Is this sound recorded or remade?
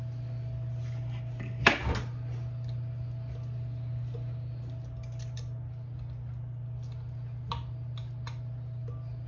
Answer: recorded